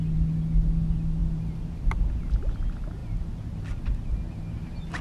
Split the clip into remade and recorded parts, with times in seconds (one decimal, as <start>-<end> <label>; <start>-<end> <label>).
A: 0.0-5.0 recorded